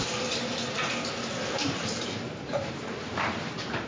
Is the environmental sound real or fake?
fake